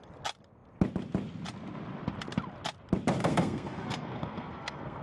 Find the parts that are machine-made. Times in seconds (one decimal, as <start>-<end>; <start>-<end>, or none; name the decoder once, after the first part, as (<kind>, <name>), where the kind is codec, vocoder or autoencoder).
3.2-5.0 (codec, SNAC)